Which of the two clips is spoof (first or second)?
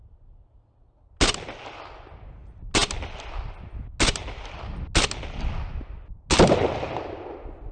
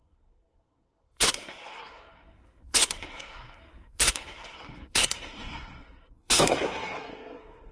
second